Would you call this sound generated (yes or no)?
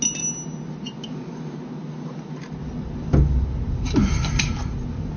no